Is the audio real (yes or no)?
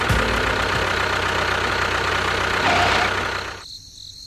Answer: yes